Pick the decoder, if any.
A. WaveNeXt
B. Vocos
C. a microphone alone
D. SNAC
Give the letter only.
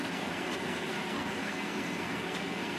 D